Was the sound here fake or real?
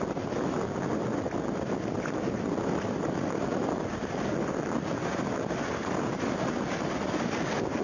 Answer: real